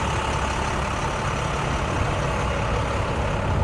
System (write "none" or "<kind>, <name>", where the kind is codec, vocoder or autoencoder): none